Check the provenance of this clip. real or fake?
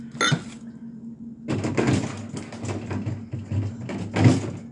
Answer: real